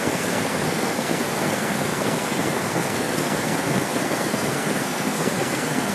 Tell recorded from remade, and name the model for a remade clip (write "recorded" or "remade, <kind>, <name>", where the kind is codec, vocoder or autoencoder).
remade, codec, SNAC